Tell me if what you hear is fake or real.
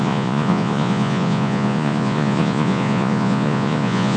fake